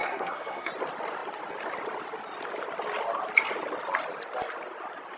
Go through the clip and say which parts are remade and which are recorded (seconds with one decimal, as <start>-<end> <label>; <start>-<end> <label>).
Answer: 0.0-0.7 remade; 0.7-5.2 recorded